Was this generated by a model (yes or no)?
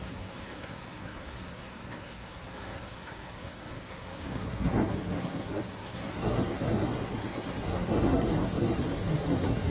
yes